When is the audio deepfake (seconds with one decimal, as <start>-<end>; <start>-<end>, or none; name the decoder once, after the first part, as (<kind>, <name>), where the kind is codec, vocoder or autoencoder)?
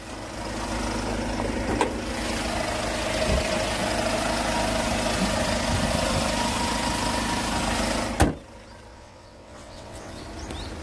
8.9-10.2 (vocoder, WaveNeXt)